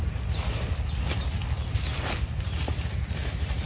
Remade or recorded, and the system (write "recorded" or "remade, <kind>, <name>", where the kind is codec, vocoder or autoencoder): recorded